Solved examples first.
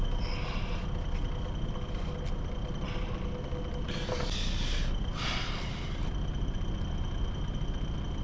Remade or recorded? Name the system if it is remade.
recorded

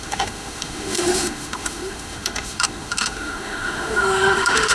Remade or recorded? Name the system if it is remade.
remade, autoencoder, DAC-VAE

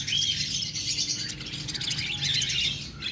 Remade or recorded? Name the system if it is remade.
recorded